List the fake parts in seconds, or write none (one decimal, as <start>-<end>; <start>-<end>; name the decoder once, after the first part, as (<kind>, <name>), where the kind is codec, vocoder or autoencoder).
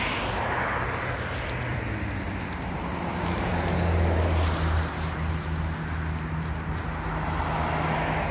1.7-3.5 (vocoder, BigVGAN v2)